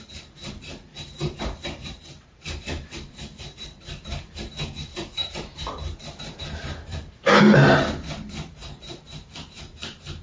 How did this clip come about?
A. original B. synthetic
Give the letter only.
B